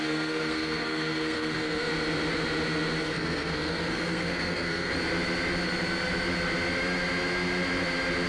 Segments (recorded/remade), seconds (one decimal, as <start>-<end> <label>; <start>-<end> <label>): 0.0-1.9 remade; 1.9-3.0 recorded; 3.0-4.9 remade; 4.9-8.3 recorded